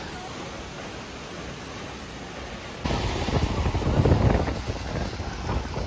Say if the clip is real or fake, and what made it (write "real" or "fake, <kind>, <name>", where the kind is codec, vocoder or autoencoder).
real